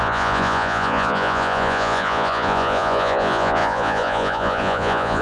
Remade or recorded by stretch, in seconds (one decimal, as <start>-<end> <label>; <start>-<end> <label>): 0.0-5.2 remade